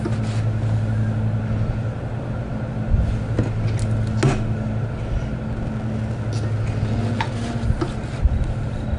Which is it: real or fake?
real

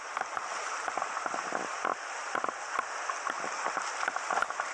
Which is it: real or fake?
real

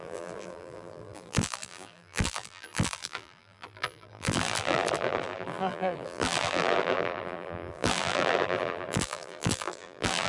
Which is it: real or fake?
fake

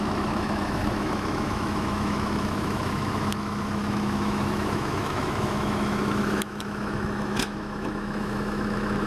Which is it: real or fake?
fake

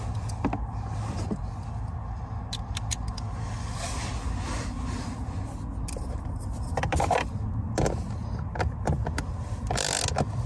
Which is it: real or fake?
real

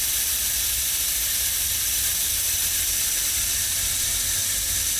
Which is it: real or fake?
real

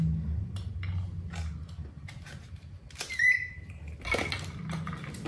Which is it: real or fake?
real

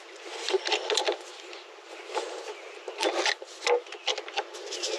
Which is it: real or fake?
real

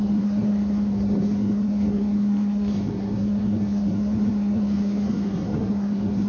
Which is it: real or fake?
fake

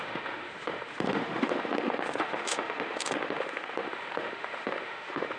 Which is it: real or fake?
fake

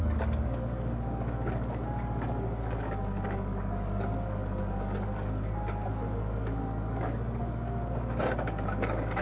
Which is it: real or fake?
fake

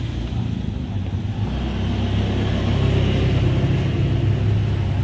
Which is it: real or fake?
real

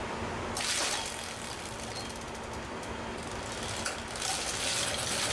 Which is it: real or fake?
fake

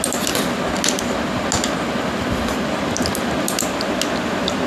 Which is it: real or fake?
real